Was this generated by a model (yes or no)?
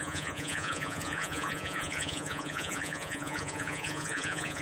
yes